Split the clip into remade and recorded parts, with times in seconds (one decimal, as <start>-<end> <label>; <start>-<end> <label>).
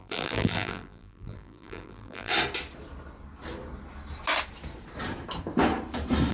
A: 0.0-2.3 remade; 2.3-6.3 recorded